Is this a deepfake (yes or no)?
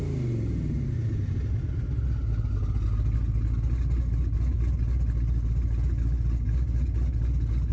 no